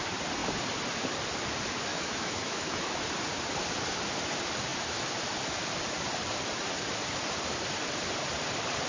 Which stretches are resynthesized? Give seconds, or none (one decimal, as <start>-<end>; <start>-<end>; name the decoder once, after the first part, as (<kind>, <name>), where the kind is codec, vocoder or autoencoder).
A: 1.9-3.0 (autoencoder, DAC-VAE)